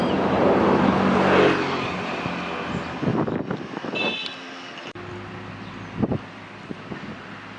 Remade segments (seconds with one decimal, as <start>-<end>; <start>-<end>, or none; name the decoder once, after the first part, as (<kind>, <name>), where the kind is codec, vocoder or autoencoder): none